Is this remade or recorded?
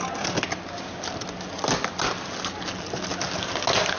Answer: recorded